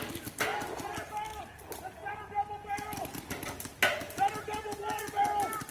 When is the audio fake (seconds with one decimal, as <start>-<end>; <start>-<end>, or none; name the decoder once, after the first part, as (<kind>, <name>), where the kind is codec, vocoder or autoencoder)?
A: none

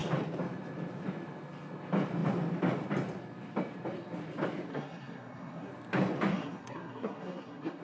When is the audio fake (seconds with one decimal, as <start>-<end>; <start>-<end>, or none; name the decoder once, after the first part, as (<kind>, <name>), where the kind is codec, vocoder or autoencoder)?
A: 4.7-5.7 (codec, SNAC); 6.3-7.8